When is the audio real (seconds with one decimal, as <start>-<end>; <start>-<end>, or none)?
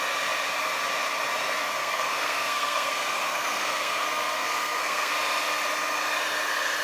0.0-1.8; 5.1-6.8